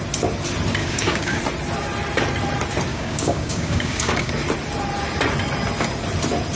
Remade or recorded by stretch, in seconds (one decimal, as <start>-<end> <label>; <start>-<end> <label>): 0.0-0.8 recorded; 0.8-1.4 remade; 1.4-2.9 recorded; 2.9-4.3 remade; 4.3-6.6 recorded